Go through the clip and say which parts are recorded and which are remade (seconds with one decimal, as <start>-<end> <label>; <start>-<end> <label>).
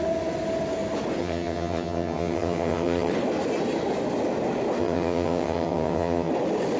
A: 0.0-1.2 recorded; 1.2-3.1 remade; 3.1-4.8 recorded; 4.8-6.3 remade; 6.3-6.8 recorded